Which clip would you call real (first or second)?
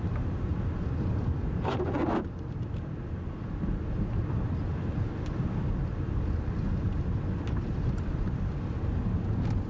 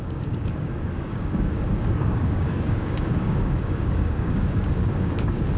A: first